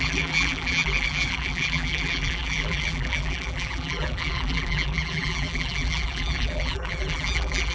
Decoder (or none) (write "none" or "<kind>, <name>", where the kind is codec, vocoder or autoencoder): vocoder, BigVGAN v2